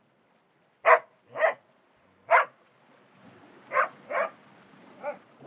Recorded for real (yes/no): yes